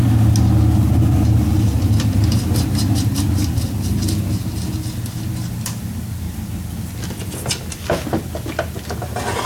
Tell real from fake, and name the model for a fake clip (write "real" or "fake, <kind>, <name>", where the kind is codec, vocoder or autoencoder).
real